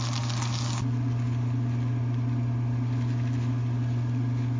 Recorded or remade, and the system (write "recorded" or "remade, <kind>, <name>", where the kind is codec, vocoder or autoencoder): recorded